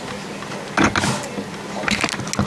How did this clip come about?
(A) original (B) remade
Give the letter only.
A